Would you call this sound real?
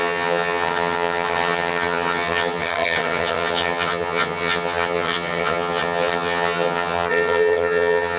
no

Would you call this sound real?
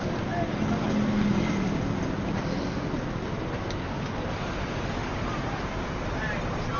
yes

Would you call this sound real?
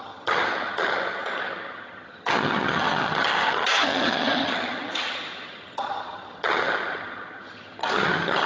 no